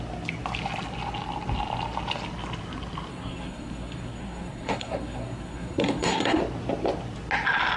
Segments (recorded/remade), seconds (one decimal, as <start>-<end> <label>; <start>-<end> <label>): 0.0-3.1 recorded; 3.1-6.4 remade; 6.4-7.8 recorded